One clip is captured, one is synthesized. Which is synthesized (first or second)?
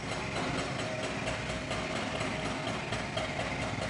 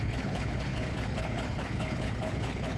second